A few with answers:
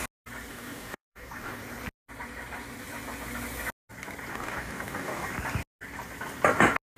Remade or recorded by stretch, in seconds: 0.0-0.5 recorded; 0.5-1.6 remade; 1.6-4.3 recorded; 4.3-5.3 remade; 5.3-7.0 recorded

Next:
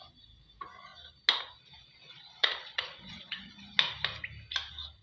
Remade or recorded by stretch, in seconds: 0.0-1.8 recorded; 1.8-3.5 remade; 3.5-5.0 recorded

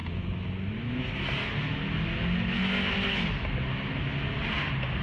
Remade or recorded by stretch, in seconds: 0.0-5.0 recorded

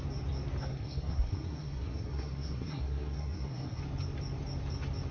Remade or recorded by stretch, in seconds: 0.0-0.7 recorded; 0.7-3.8 remade; 3.8-5.1 recorded

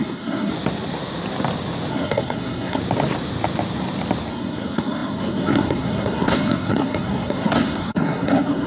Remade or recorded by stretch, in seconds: 0.0-0.5 remade; 0.5-1.9 recorded; 1.9-2.8 remade; 2.8-4.3 recorded; 4.3-8.7 remade

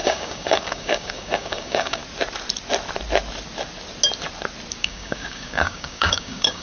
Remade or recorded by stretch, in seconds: 0.0-2.0 remade; 2.0-4.8 recorded; 4.8-6.6 remade